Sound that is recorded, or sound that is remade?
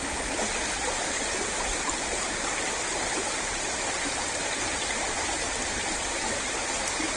recorded